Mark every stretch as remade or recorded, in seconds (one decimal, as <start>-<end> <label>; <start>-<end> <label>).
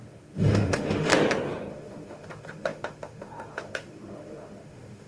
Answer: 0.0-1.1 remade; 1.1-1.7 recorded; 1.7-5.1 remade